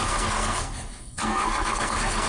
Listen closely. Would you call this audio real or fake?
fake